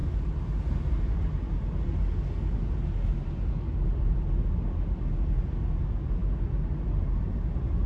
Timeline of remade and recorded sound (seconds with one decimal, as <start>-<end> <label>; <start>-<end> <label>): 0.0-7.9 recorded